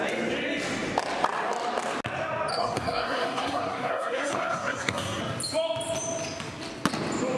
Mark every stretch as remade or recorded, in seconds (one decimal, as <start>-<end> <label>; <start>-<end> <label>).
0.0-2.5 recorded; 2.5-5.2 remade; 5.2-7.4 recorded